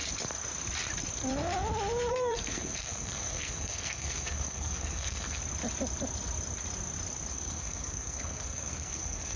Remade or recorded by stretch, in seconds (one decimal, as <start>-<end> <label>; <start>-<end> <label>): 0.0-2.1 recorded; 2.1-5.4 remade; 5.4-7.3 recorded; 7.3-9.4 remade

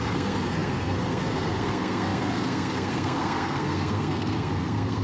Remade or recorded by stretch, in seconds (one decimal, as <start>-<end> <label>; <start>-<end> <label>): 0.0-5.0 remade

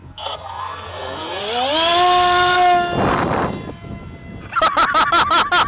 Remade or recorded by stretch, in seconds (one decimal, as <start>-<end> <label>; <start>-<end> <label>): 0.0-1.4 remade; 1.4-5.7 recorded

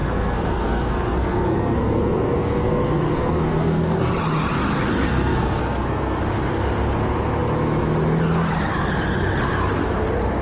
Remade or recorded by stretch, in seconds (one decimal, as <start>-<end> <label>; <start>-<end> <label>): 0.0-4.1 remade; 4.1-5.0 recorded; 5.0-6.2 remade; 6.2-10.4 recorded

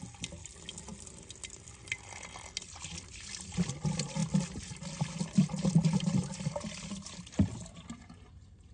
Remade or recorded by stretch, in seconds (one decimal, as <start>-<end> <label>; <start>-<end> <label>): 0.0-8.7 recorded

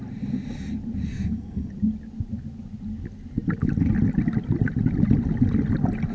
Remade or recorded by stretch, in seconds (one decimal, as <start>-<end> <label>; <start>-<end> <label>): 0.0-1.1 recorded; 1.1-1.7 remade; 1.7-6.1 recorded

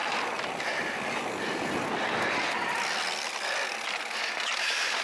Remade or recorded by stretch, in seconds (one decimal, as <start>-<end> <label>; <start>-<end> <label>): 0.0-5.0 recorded

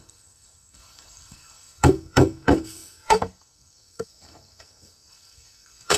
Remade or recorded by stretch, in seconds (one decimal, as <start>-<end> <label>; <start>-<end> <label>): 0.0-6.0 remade